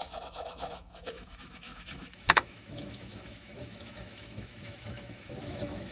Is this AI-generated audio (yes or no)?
yes